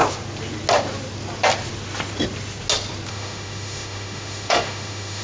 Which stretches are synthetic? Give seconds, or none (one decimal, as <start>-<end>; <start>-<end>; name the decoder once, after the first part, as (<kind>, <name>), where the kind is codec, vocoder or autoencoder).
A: 3.1-5.2 (autoencoder, DAC-VAE)